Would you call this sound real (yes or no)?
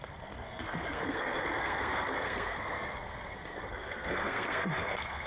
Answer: no